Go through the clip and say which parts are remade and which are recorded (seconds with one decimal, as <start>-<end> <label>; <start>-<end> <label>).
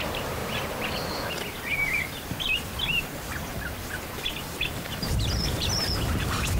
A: 0.0-0.4 remade; 0.4-4.4 recorded; 4.4-6.6 remade